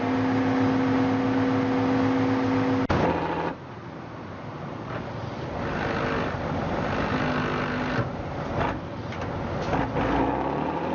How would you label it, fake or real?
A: real